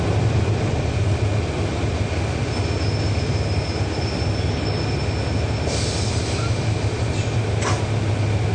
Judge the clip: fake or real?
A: real